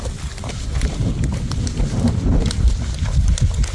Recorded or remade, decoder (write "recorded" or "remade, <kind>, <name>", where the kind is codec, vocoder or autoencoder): recorded